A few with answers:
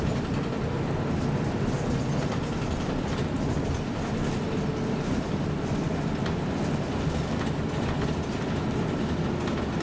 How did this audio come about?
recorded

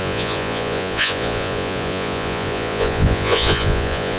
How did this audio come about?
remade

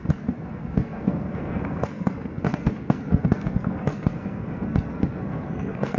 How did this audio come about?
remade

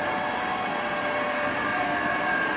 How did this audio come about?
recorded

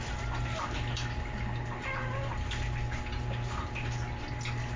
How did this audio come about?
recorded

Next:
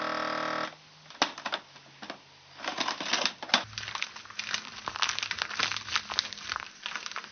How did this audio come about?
recorded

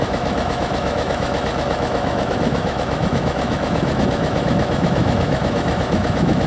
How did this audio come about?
remade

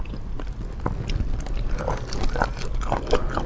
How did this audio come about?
recorded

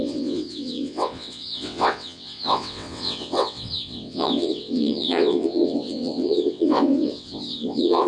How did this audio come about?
remade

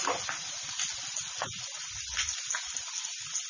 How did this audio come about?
recorded